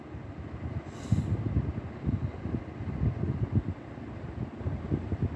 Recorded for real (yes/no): yes